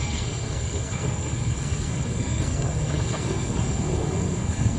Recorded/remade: remade